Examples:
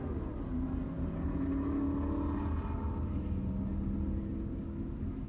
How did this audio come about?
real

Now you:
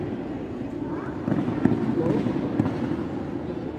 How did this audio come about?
real